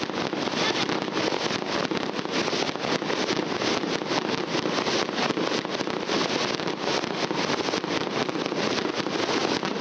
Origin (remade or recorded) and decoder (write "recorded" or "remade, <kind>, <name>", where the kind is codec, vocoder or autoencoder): recorded